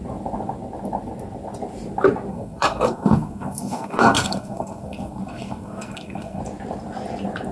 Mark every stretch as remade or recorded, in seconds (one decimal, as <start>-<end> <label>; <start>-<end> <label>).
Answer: 0.0-2.3 recorded; 2.3-6.4 remade; 6.4-7.5 recorded